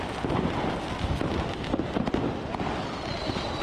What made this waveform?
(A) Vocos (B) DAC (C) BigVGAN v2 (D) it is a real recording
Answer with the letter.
D